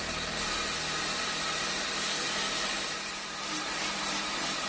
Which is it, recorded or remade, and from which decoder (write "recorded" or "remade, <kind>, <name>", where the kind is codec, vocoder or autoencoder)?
recorded